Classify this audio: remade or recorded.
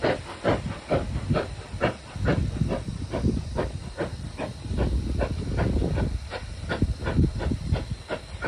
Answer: recorded